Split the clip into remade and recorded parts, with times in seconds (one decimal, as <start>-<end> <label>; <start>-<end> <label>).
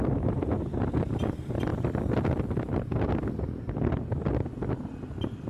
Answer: 0.0-5.5 recorded